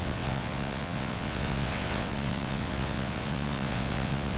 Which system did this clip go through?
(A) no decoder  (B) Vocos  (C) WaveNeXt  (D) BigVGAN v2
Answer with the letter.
C